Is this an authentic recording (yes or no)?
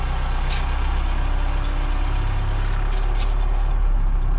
yes